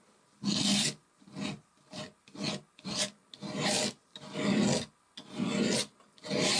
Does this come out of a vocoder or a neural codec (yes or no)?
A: no